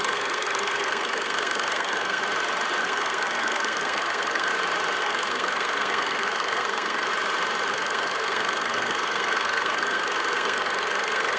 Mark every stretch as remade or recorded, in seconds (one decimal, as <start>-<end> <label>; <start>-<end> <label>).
0.0-2.2 remade; 2.2-2.8 recorded; 2.8-4.5 remade; 4.5-5.0 recorded; 5.0-7.1 remade; 7.1-7.7 recorded; 7.7-11.4 remade